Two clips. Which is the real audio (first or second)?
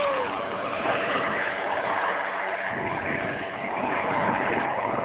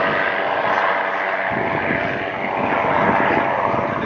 second